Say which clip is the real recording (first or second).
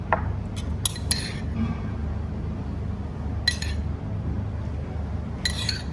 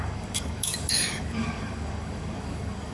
first